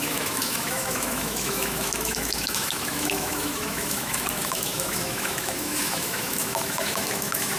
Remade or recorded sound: remade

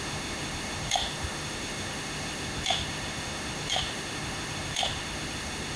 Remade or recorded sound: remade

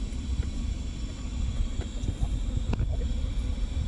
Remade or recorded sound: recorded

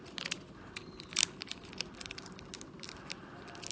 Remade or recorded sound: recorded